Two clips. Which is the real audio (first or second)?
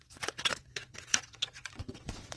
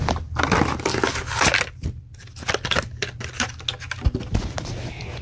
second